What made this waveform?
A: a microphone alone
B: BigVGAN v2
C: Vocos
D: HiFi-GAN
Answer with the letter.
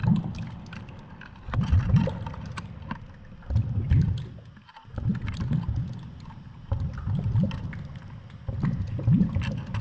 A